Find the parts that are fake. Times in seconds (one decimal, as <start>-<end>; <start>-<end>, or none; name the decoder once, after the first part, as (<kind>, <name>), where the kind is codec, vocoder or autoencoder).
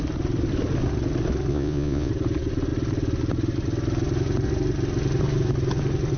1.5-2.1 (vocoder, Vocos)